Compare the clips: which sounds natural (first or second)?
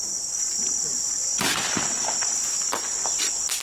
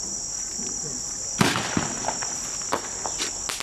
second